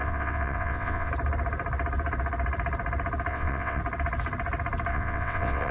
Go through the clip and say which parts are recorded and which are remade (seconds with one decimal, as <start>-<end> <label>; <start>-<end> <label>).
0.0-1.1 remade; 1.1-3.3 recorded; 3.3-3.8 remade; 3.8-4.9 recorded; 4.9-5.7 remade

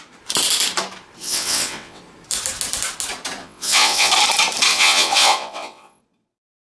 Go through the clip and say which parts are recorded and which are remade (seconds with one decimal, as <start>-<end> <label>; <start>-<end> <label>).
0.0-1.2 recorded; 1.2-2.0 remade; 2.0-3.4 recorded; 3.4-4.1 remade; 4.1-4.7 recorded; 4.7-6.0 remade; 6.0-6.7 recorded

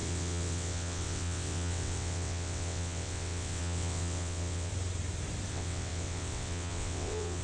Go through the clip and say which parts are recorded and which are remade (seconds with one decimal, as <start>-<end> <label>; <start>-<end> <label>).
0.0-4.7 remade; 4.7-5.5 recorded; 5.5-7.4 remade

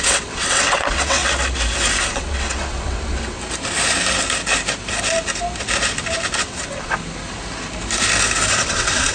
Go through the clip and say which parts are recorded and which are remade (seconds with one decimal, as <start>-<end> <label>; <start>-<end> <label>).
0.0-1.2 remade; 1.2-2.1 recorded; 2.1-3.4 remade; 3.4-6.4 recorded; 6.4-7.0 remade; 7.0-8.5 recorded; 8.5-9.1 remade

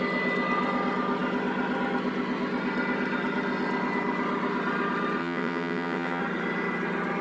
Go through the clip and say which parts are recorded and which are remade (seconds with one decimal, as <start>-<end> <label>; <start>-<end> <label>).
0.0-5.2 recorded; 5.2-6.2 remade; 6.2-7.2 recorded

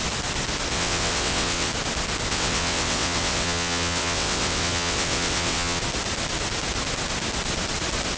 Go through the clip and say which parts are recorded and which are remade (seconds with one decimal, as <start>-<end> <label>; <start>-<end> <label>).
0.0-0.7 recorded; 0.7-1.7 remade; 1.7-2.3 recorded; 2.3-5.8 remade; 5.8-8.2 recorded

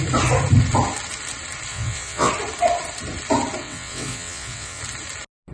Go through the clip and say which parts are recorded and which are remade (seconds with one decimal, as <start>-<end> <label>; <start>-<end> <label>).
0.0-1.7 recorded; 1.7-2.3 remade; 2.3-3.6 recorded; 3.6-4.8 remade; 4.8-5.5 recorded

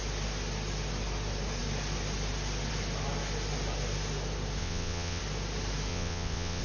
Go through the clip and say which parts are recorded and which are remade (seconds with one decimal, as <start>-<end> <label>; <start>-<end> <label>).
0.0-4.6 recorded; 4.6-5.2 remade; 5.2-5.9 recorded; 5.9-6.6 remade